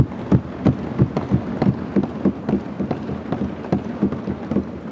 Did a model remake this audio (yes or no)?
no